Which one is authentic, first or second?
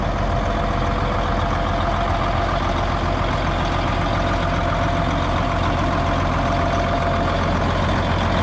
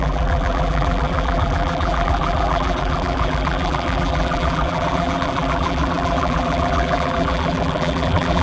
first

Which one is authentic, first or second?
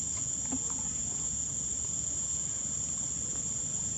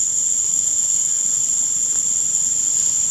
first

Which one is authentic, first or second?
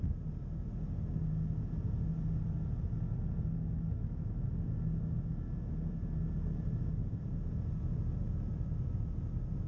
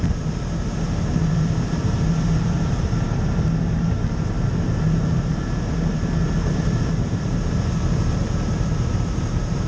first